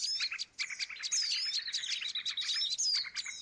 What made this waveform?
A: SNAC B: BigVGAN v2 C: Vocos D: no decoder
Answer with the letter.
D